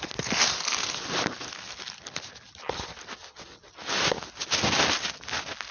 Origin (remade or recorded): recorded